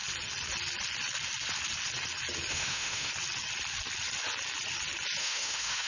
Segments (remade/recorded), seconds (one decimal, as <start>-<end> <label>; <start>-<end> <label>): 0.0-2.5 recorded; 2.5-3.1 remade; 3.1-5.2 recorded; 5.2-5.9 remade